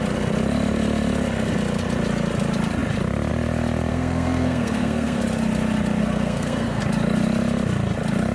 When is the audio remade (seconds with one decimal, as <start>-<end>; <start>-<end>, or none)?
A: 3.9-5.2; 6.0-6.8